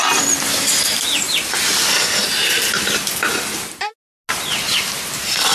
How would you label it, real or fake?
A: real